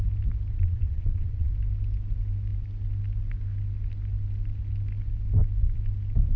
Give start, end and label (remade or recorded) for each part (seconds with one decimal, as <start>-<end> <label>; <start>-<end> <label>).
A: 0.0-0.5 recorded; 0.5-1.5 remade; 1.5-6.4 recorded